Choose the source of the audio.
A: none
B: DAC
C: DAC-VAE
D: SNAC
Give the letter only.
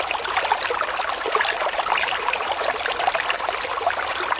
A